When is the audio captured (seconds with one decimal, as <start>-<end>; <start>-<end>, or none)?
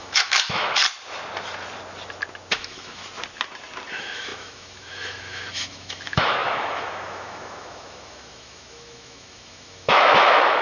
0.8-2.5; 3.0-3.9